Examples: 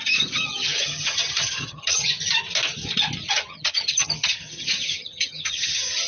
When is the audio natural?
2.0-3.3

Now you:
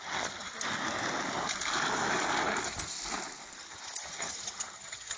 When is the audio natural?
0.5-3.6

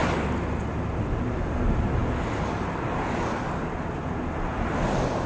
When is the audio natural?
0.0-5.3